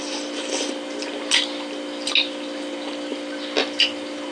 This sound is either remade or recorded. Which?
recorded